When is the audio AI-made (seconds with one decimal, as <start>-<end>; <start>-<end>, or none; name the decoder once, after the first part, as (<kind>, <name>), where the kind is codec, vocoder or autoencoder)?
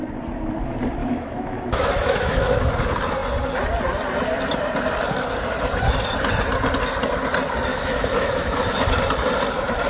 1.0-2.7 (autoencoder, DAC-VAE); 7.7-8.9